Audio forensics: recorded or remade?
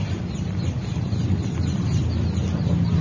recorded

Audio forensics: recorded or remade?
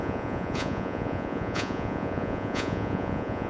remade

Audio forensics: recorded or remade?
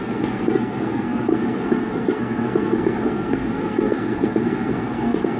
remade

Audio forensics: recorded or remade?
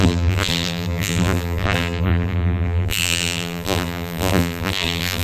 remade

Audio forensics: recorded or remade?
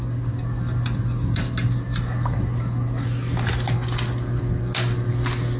recorded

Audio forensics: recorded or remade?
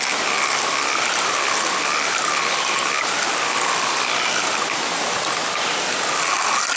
recorded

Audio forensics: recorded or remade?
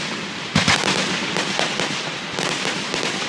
recorded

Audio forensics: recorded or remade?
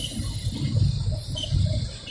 recorded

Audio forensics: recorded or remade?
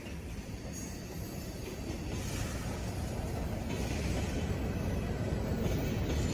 recorded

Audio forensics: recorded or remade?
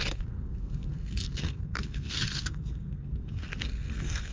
remade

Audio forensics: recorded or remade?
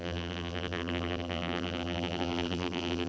remade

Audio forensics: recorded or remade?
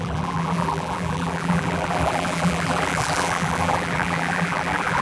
remade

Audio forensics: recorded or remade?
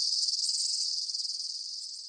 recorded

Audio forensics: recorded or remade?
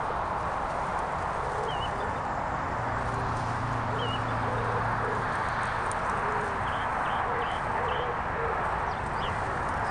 recorded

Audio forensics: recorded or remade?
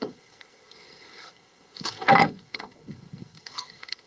remade